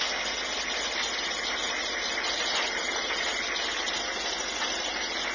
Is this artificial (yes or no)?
no